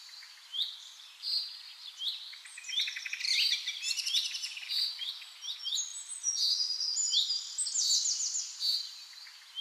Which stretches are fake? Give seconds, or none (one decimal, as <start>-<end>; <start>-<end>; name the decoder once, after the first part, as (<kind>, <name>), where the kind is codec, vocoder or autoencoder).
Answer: 0.5-5.1 (vocoder, BigVGAN v2)